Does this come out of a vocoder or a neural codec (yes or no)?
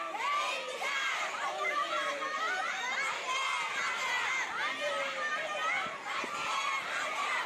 no